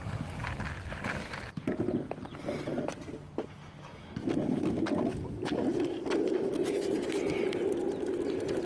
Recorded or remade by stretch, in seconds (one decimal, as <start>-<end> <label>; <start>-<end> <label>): 0.0-8.7 recorded